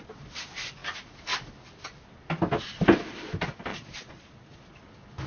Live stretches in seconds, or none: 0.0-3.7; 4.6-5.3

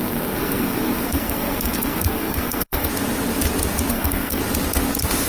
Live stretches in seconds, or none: 2.9-3.9; 4.4-5.3

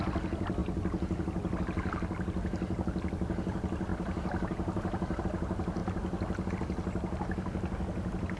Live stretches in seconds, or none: 0.0-3.9; 5.2-8.4

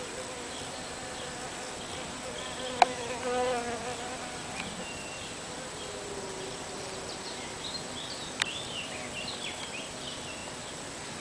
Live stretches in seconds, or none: 0.0-11.2

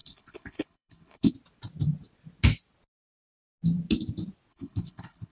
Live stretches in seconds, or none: 1.3-4.5